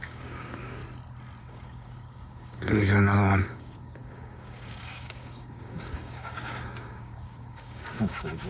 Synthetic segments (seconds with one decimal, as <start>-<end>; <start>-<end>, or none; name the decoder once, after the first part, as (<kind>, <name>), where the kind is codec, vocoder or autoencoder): 0.0-0.8 (codec, DAC); 1.4-8.5